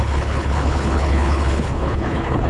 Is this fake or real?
fake